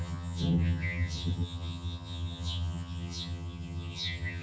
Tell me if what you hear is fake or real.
fake